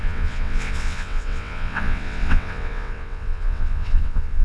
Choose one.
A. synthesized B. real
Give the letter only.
A